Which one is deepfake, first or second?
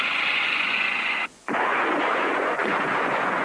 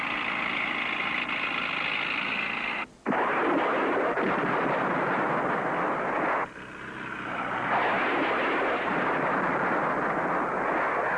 first